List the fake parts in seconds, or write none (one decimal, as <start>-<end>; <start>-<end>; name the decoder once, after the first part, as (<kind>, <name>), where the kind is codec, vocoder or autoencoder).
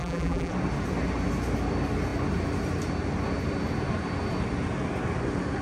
0.0-0.5 (vocoder, BigVGAN v2)